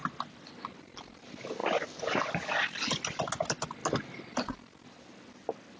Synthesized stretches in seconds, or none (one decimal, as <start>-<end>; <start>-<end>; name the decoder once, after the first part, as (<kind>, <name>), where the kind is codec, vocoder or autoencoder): none